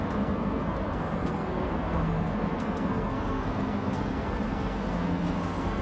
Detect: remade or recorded remade